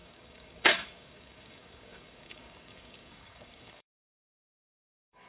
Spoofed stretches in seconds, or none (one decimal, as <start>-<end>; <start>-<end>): 0.0-5.3